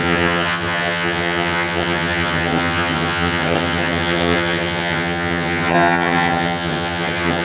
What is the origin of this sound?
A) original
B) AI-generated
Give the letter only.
B